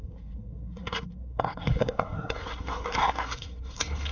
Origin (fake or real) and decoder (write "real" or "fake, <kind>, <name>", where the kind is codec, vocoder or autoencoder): fake, codec, SNAC